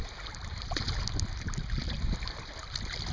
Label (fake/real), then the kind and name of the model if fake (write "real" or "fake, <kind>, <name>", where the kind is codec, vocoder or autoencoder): real